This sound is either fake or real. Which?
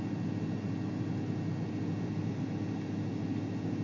real